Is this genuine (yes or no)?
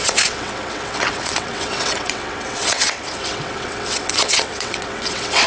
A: no